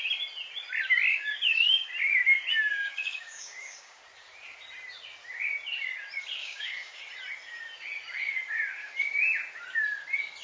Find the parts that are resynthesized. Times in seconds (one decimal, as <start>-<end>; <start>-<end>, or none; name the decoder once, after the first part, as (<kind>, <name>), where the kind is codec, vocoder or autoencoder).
1.1-1.9 (codec, DAC); 2.7-4.0; 6.4-7.0